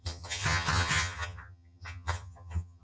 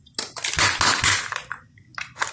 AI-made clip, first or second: first